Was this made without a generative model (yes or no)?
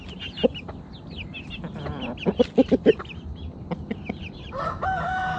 yes